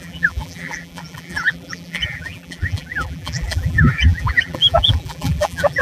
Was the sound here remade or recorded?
remade